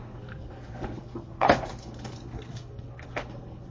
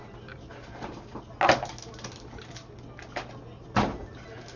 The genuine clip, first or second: second